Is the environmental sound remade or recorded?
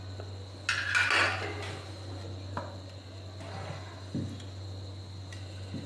recorded